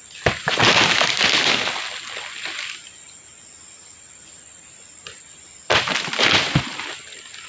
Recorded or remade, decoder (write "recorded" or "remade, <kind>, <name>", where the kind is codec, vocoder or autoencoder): recorded